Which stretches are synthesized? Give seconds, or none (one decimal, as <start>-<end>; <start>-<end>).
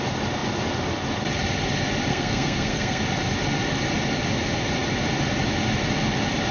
2.1-3.0